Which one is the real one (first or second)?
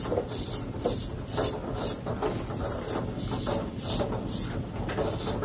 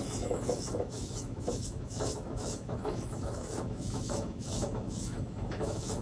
first